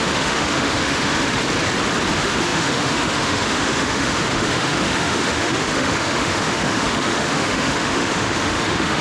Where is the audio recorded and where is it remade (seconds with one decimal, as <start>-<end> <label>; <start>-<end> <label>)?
0.0-1.3 remade; 1.3-2.1 recorded; 2.1-9.0 remade